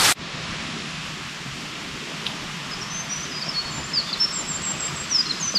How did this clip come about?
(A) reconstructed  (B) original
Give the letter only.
B